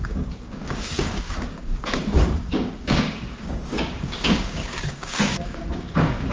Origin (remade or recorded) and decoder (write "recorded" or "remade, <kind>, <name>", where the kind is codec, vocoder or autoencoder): remade, codec, DAC